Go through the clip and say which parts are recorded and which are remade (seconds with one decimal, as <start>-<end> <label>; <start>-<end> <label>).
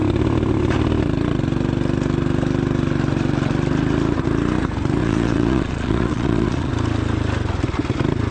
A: 0.0-5.0 recorded; 5.0-6.7 remade; 6.7-8.3 recorded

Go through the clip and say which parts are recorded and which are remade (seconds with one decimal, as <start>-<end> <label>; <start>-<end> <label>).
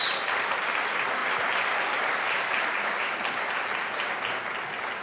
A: 0.0-5.0 recorded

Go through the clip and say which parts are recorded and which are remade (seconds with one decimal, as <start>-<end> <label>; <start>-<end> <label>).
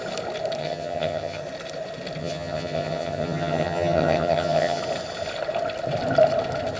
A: 0.0-0.6 recorded; 0.6-1.4 remade; 1.4-2.2 recorded; 2.2-4.8 remade; 4.8-6.8 recorded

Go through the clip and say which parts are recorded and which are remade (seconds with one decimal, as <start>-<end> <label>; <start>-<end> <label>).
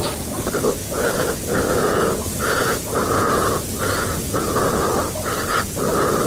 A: 0.0-0.8 recorded; 0.8-4.4 remade; 4.4-6.3 recorded